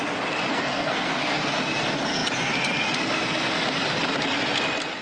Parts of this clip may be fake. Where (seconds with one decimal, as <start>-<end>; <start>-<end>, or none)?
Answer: 0.5-1.6